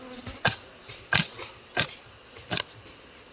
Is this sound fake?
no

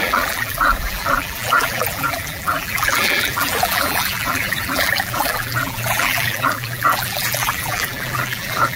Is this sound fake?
yes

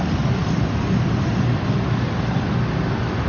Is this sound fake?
no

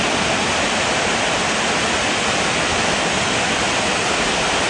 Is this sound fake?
no